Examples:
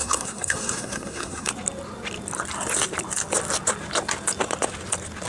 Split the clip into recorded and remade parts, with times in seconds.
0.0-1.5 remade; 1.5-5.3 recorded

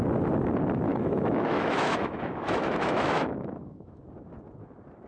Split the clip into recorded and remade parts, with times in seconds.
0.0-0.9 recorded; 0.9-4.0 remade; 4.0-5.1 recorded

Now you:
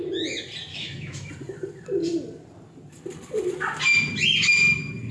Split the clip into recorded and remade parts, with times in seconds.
0.0-0.7 recorded; 0.7-1.3 remade; 1.3-5.1 recorded

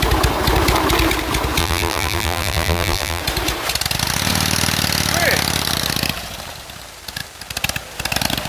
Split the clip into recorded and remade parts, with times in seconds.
0.0-1.6 recorded; 1.6-3.2 remade; 3.2-8.5 recorded